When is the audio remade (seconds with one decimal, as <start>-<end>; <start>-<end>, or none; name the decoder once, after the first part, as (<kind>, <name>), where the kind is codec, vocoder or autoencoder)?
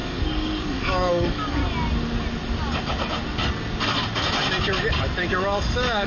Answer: 0.0-1.6 (codec, DAC); 5.3-6.1